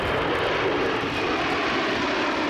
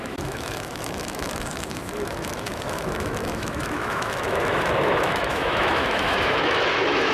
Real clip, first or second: first